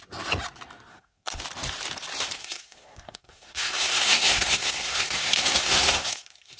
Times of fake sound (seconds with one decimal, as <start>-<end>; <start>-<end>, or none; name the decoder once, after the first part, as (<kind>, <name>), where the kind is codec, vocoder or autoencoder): 0.9-1.4 (codec, SNAC); 2.4-6.6